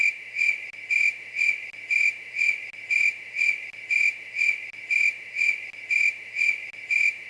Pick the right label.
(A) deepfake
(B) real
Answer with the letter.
B